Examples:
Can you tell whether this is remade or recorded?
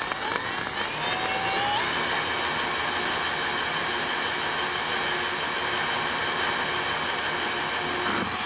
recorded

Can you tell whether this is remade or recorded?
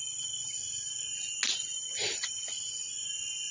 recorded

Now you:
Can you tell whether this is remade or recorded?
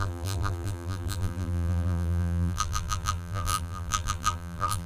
remade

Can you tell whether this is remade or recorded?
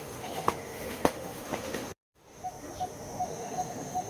remade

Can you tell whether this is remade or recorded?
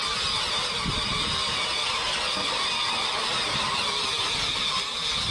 recorded